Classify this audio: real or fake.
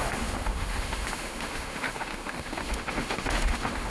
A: fake